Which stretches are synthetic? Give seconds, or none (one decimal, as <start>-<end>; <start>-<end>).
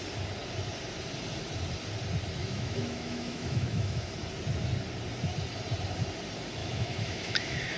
2.4-4.1; 6.6-7.8